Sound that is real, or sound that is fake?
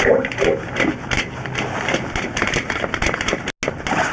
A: real